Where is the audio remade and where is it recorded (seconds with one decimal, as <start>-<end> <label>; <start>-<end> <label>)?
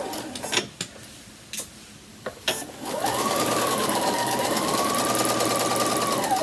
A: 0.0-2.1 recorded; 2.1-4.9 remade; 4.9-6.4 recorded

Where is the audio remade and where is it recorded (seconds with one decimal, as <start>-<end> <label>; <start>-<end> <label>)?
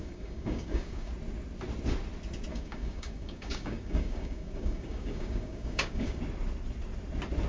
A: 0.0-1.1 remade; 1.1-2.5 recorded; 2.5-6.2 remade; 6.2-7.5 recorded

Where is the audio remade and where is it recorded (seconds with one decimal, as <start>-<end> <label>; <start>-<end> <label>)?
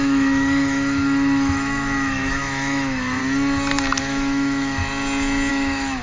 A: 0.0-3.2 remade; 3.2-4.0 recorded; 4.0-4.8 remade; 4.8-5.5 recorded; 5.5-6.0 remade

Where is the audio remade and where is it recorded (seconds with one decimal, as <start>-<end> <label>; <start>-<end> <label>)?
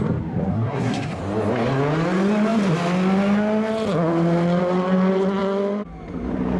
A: 0.0-0.5 recorded; 0.5-1.2 remade; 1.2-6.6 recorded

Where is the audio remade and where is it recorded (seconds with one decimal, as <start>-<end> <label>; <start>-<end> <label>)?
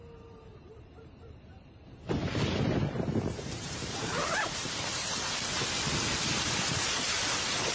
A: 0.0-7.7 remade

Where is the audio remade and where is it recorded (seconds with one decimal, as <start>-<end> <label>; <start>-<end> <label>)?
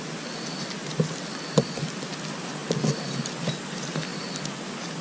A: 0.0-5.0 recorded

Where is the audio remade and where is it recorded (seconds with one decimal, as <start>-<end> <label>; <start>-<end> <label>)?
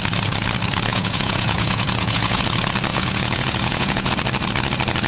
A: 0.0-0.9 recorded; 0.9-2.4 remade; 2.4-2.9 recorded; 2.9-4.1 remade; 4.1-5.1 recorded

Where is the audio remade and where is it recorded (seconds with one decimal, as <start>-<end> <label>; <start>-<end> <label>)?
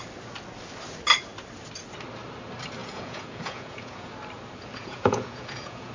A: 0.0-2.8 recorded; 2.8-4.1 remade; 4.1-4.8 recorded; 4.8-5.9 remade